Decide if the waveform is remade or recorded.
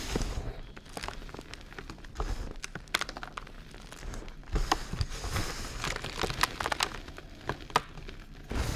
recorded